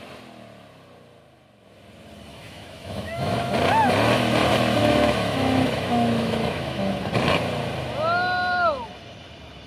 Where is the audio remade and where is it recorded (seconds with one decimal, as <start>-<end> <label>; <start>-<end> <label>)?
0.0-2.3 recorded; 2.3-3.5 remade; 3.5-4.8 recorded; 4.8-6.9 remade; 6.9-9.7 recorded